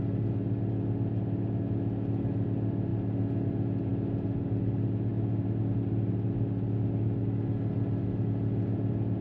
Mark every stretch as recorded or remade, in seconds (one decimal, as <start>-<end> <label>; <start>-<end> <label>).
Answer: 0.0-9.2 recorded